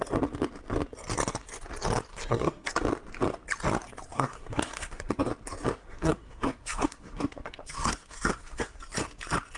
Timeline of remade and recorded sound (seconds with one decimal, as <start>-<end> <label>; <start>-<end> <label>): 0.0-2.1 recorded; 2.1-2.7 remade; 2.7-4.1 recorded; 4.1-5.3 remade; 5.3-5.8 recorded; 5.8-8.8 remade; 8.8-9.6 recorded